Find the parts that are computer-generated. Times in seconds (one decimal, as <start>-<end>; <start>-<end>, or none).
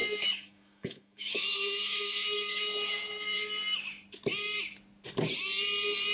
0.0-3.4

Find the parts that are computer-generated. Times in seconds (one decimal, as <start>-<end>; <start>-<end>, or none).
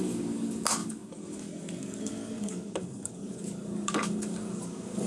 0.0-5.1